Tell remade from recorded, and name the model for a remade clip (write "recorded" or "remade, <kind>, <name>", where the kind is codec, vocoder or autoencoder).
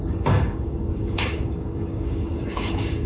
remade, codec, DAC